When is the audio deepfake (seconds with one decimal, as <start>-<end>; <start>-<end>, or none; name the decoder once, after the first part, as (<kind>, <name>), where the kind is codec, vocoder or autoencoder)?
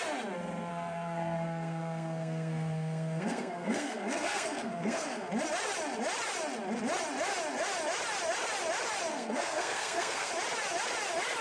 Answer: 0.7-5.3 (codec, SNAC); 9.1-10.3